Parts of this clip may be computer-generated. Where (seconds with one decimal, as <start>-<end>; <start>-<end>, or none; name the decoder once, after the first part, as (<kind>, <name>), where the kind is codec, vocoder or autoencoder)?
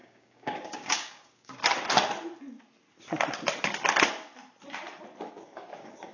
0.0-1.6 (codec, DAC); 5.3-6.1